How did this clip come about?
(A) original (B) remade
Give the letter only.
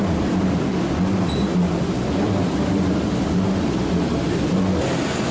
A